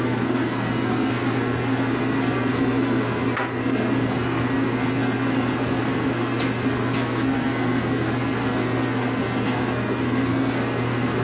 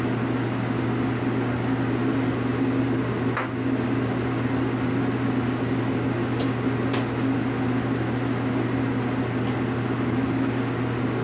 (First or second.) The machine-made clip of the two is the first